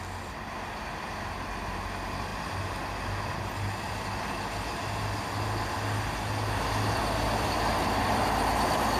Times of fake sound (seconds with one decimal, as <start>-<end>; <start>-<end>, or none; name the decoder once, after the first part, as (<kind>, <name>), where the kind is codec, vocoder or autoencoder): none